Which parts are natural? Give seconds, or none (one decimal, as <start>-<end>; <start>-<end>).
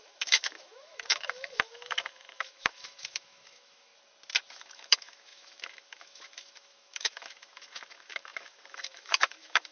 3.9-4.5